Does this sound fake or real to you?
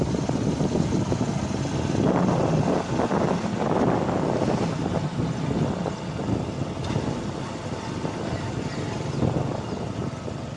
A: real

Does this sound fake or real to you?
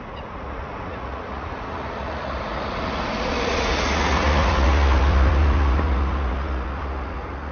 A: fake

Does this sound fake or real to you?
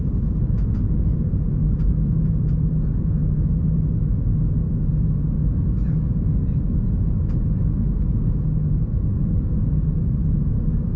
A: fake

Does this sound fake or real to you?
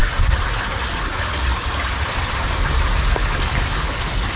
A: real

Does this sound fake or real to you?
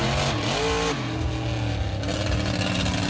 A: real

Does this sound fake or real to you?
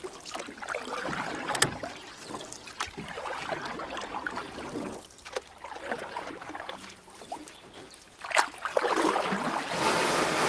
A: real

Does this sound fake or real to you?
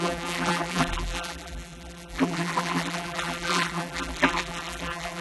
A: fake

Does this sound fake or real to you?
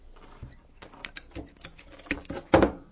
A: real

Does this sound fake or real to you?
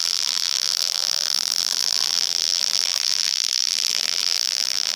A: fake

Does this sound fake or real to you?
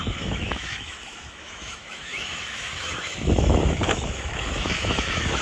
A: fake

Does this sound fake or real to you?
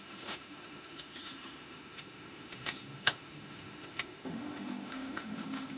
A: fake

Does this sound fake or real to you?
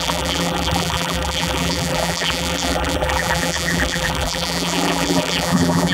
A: fake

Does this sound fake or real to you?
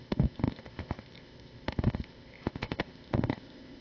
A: fake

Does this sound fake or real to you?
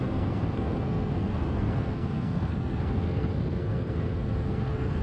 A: fake